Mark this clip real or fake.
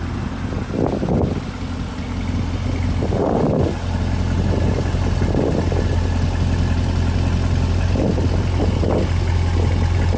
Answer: real